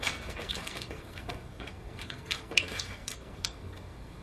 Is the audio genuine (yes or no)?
no